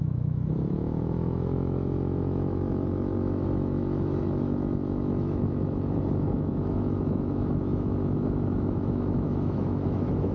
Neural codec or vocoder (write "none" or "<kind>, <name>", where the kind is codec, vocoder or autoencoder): autoencoder, DAC-VAE